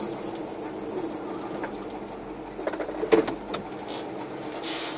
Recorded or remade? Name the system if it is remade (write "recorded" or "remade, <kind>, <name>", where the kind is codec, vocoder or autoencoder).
recorded